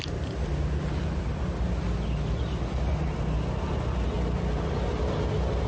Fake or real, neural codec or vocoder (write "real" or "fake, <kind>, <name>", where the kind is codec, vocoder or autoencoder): real